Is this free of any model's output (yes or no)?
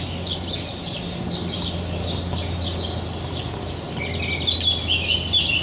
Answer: yes